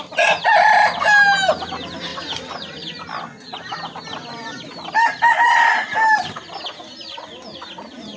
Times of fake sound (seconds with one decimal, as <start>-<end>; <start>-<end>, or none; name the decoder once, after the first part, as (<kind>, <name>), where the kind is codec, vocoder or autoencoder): none